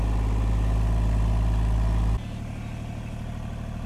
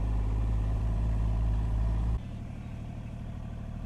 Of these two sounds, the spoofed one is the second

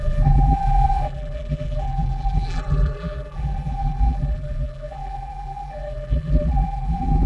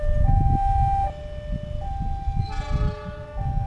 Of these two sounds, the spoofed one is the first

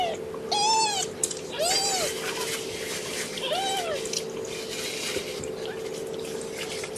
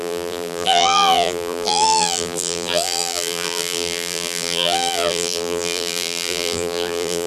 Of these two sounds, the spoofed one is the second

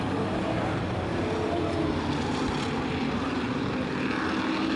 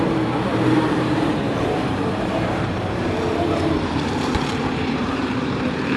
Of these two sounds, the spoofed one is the second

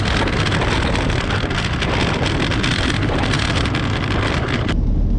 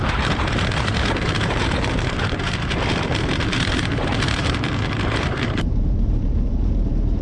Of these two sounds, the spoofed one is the second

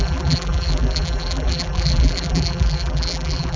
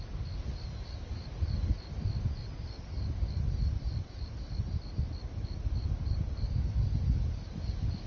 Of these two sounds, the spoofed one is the first